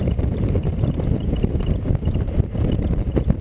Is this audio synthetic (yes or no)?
yes